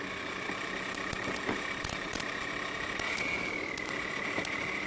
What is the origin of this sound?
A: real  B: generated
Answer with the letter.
A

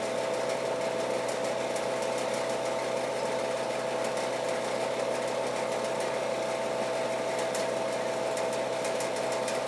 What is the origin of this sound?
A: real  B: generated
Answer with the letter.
A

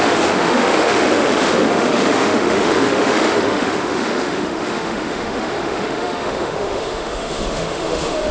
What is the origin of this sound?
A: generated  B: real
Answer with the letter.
A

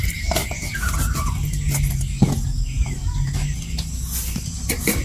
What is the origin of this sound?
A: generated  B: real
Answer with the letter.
B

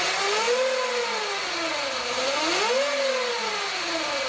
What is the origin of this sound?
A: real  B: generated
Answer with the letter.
A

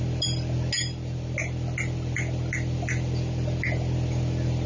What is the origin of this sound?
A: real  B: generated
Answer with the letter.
A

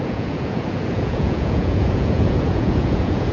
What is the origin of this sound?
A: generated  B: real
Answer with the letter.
A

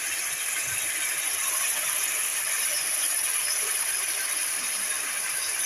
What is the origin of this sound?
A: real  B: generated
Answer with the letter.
A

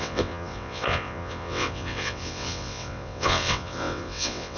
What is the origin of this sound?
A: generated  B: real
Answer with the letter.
A